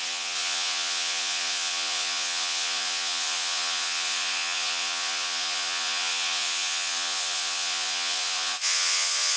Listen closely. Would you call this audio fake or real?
fake